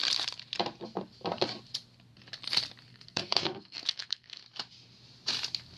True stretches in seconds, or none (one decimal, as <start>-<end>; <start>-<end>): 0.0-2.9; 4.4-5.8